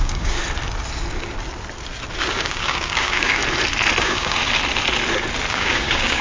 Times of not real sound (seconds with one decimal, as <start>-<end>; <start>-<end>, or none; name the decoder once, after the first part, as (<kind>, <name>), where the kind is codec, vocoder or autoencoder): 0.0-0.4 (codec, DAC); 2.2-3.4; 4.0-4.4; 5.5-6.2